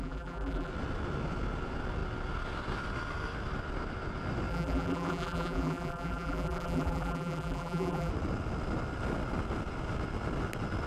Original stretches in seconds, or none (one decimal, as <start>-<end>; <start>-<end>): 0.7-4.5; 8.1-10.9